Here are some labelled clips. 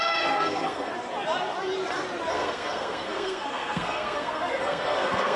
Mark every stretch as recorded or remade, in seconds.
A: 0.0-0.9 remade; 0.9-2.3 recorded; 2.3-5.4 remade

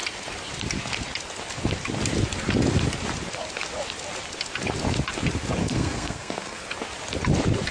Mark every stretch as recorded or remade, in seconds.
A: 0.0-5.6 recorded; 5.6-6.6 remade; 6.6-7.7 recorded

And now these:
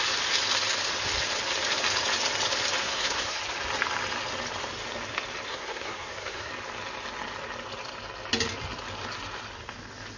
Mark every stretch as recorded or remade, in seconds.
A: 0.0-2.8 recorded; 2.8-3.4 remade; 3.4-5.5 recorded; 5.5-6.5 remade; 6.5-10.2 recorded

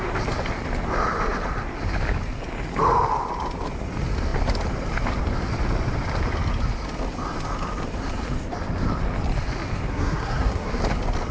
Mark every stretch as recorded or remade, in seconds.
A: 0.0-9.9 recorded; 9.9-10.8 remade; 10.8-11.3 recorded

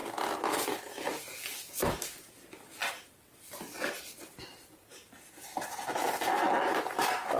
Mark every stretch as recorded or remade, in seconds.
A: 0.0-7.4 recorded

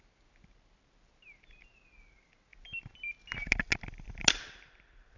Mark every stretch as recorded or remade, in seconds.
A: 0.0-5.2 recorded